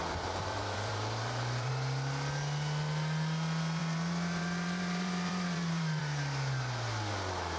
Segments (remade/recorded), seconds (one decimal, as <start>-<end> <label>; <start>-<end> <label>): 0.0-1.7 remade; 1.7-3.8 recorded; 3.8-6.0 remade; 6.0-7.6 recorded